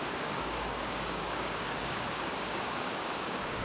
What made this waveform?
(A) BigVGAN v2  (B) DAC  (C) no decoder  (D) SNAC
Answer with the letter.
B